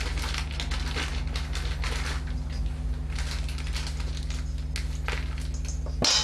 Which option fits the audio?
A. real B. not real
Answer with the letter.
A